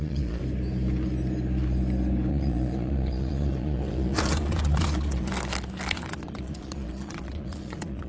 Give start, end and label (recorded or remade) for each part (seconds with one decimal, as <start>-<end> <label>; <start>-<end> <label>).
0.0-0.4 remade; 0.4-2.3 recorded; 2.3-5.3 remade; 5.3-5.9 recorded; 5.9-8.1 remade

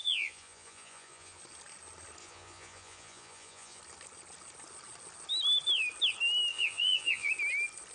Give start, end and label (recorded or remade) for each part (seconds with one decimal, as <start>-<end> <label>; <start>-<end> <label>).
0.0-1.4 remade; 1.4-2.2 recorded; 2.2-3.8 remade; 3.8-6.5 recorded; 6.5-7.3 remade; 7.3-7.9 recorded

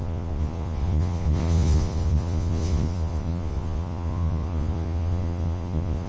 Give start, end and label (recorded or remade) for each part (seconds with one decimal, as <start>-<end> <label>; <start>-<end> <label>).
0.0-6.1 remade

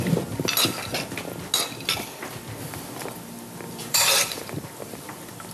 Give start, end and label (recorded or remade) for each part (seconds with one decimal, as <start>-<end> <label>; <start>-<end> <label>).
0.0-3.8 recorded; 3.8-4.4 remade; 4.4-5.5 recorded

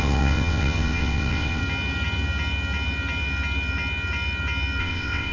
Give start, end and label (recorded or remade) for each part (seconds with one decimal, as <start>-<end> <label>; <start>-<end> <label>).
0.0-1.6 remade; 1.6-4.8 recorded; 4.8-5.3 remade

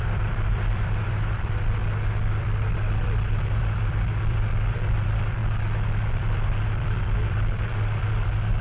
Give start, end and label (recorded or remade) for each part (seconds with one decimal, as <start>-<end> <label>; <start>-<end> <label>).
0.0-1.8 remade; 1.8-2.4 recorded; 2.4-5.4 remade; 5.4-6.1 recorded; 6.1-8.6 remade

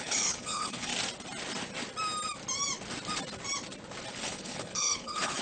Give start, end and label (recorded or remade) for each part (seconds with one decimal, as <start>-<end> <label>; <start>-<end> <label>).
0.0-0.9 remade; 0.9-4.1 recorded; 4.1-5.4 remade